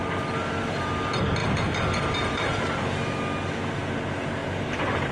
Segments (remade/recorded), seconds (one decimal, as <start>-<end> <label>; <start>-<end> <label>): 0.0-1.4 recorded; 1.4-2.8 remade; 2.8-4.4 recorded; 4.4-5.1 remade